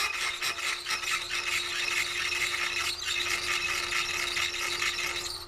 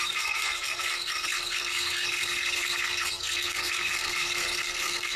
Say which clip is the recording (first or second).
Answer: first